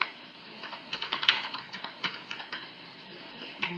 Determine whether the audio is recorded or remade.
remade